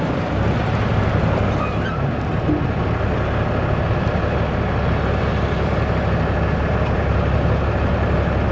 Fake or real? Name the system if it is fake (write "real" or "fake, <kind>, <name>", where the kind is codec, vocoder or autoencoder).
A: real